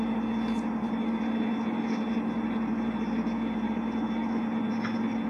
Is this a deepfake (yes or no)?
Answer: no